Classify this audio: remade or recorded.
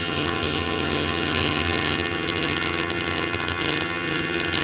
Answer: remade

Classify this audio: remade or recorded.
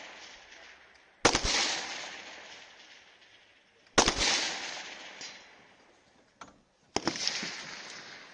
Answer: recorded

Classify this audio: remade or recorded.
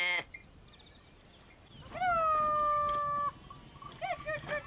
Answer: recorded